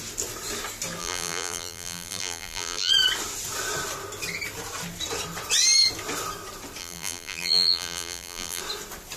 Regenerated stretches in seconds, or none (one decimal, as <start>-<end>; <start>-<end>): 1.0-2.9; 6.8-8.6

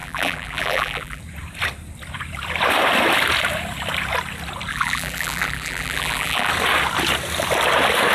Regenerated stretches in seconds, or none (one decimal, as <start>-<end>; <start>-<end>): 0.0-1.2; 4.7-6.5

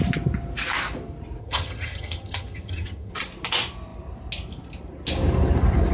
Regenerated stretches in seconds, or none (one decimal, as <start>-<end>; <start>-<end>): 1.4-3.1

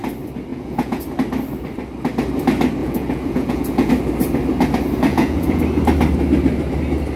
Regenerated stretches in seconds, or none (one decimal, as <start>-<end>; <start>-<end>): 0.5-1.0; 2.8-3.9; 5.1-5.6

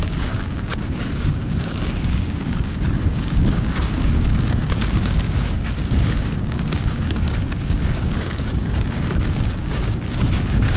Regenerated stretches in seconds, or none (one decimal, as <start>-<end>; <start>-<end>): 0.0-10.8

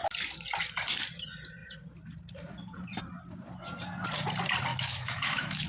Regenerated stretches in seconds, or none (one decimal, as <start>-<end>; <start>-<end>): 4.7-5.7

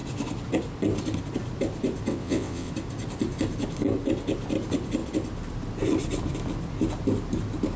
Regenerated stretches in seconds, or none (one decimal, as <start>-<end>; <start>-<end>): 2.1-2.7